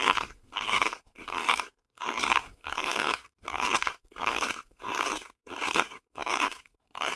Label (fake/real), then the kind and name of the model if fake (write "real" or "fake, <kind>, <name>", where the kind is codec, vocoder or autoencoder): fake, codec, SNAC